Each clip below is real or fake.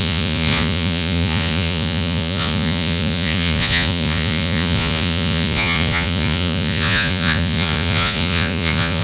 fake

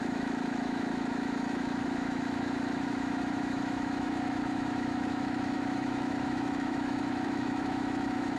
fake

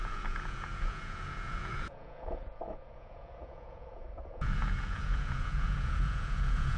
fake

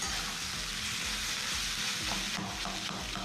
real